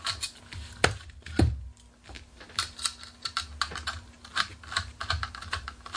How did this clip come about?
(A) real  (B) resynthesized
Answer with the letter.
A